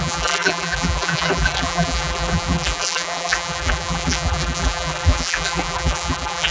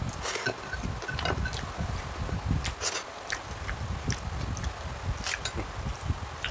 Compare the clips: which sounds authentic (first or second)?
second